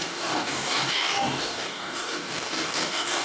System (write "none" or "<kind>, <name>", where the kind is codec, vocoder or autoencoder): codec, DAC